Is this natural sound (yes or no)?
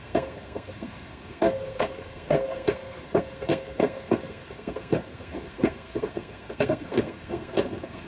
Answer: no